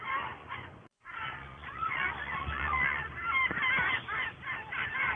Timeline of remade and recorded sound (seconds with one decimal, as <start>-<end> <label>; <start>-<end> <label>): 0.0-0.4 recorded; 0.4-3.1 remade; 3.1-5.2 recorded